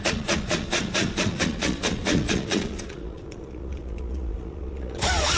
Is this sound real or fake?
fake